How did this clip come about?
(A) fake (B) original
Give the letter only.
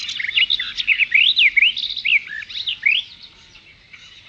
B